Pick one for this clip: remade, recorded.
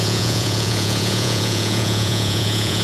remade